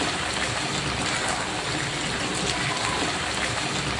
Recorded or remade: recorded